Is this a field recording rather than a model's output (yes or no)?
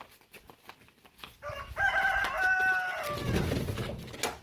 yes